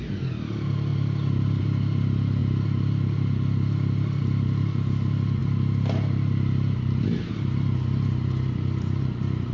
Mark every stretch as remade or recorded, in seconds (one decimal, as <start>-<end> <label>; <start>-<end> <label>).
0.0-9.5 recorded